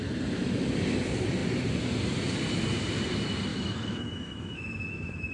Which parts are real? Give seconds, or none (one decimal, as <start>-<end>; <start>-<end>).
0.0-3.5